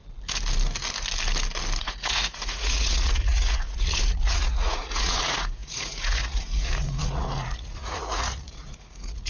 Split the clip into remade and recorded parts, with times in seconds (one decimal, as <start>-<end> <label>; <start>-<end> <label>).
0.0-1.8 recorded; 1.8-9.3 remade